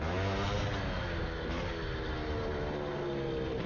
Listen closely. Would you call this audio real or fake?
real